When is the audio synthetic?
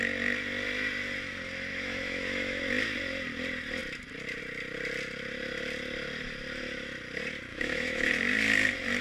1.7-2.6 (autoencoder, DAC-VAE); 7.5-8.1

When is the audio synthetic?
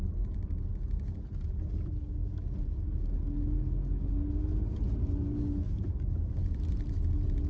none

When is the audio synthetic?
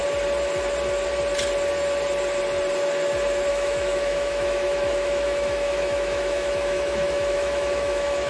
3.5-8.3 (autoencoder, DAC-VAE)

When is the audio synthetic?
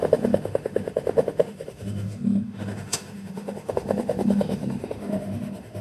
0.0-5.8 (autoencoder, DAC-VAE)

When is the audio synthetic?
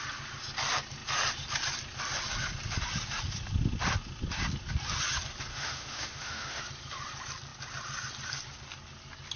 5.5-6.6 (autoencoder, DAC-VAE)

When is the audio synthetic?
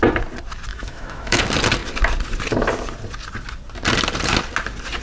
0.7-1.4 (autoencoder, DAC-VAE)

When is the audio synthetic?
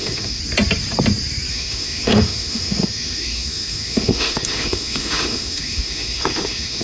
0.0-0.4 (autoencoder, DAC-VAE); 1.5-6.8